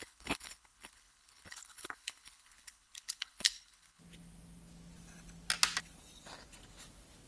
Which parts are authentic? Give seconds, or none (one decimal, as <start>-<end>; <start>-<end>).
4.0-7.3